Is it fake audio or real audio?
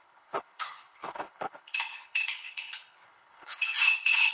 fake